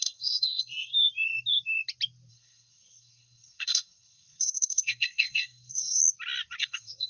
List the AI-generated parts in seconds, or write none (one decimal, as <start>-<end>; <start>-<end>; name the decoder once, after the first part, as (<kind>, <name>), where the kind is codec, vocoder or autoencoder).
0.0-0.9 (codec, SNAC); 2.3-6.0; 6.6-7.1